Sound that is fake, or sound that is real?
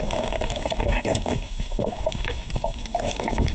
fake